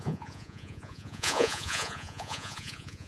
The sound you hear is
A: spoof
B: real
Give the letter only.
A